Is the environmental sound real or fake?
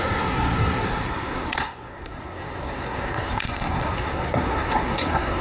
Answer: fake